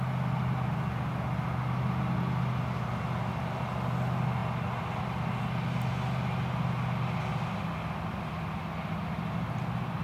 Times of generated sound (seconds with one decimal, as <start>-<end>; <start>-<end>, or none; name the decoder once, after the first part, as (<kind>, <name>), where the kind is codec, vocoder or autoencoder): none